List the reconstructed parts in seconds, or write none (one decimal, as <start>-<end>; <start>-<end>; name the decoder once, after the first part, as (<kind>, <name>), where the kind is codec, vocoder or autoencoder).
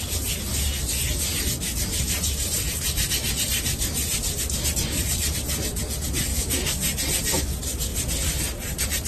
6.3-7.0 (autoencoder, DAC-VAE)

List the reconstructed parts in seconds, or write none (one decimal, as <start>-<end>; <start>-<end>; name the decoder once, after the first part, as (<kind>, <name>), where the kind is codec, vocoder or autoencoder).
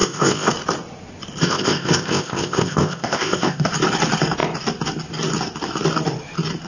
0.0-0.5 (codec, ZipCodec); 1.4-3.7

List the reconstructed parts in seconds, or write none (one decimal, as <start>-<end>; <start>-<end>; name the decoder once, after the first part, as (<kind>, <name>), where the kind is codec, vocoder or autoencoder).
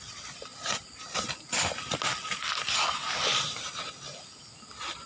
none